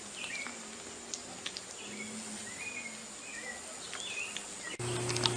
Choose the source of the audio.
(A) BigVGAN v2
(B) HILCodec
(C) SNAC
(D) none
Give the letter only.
D